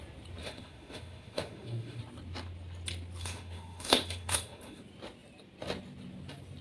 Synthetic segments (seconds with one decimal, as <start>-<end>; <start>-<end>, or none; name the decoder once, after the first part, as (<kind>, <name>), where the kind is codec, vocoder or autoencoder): 0.4-2.0 (autoencoder, DAC-VAE); 3.2-4.8